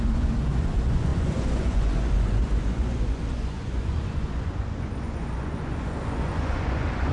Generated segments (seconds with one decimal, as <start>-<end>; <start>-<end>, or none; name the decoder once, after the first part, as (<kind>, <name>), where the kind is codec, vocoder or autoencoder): 0.0-7.1 (vocoder, Vocos)